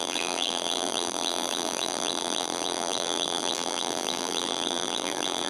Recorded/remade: remade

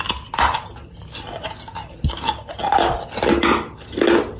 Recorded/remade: recorded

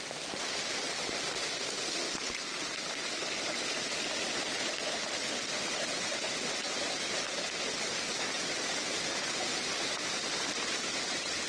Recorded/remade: recorded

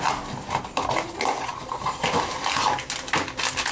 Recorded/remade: recorded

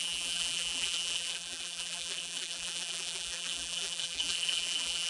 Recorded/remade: remade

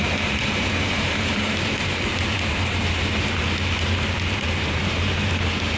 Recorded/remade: remade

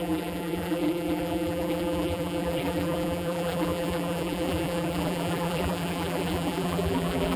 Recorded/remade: remade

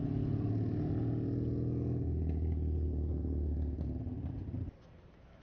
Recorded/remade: recorded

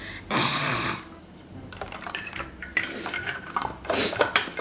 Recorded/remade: remade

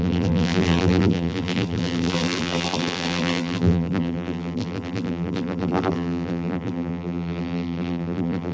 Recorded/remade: remade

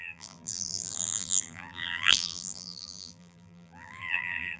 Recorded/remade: remade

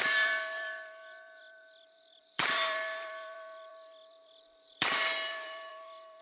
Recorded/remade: remade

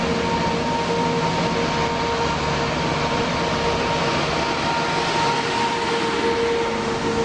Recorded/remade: recorded